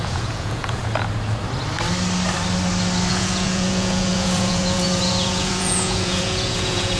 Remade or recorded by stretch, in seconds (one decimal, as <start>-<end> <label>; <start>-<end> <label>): 0.0-0.8 remade; 0.8-3.1 recorded; 3.1-7.0 remade